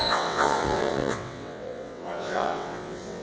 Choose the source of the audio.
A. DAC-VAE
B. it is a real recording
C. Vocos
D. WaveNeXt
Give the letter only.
D